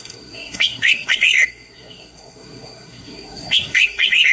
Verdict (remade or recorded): remade